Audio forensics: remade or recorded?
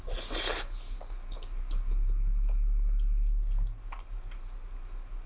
recorded